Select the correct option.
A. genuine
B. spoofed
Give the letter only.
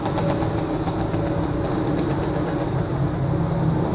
A